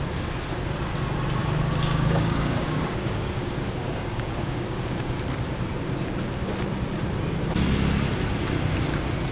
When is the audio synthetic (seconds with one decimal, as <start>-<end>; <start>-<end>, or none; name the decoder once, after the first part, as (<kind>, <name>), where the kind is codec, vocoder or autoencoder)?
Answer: 1.4-5.2 (codec, DAC)